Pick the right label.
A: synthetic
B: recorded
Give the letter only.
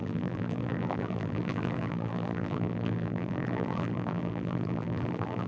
A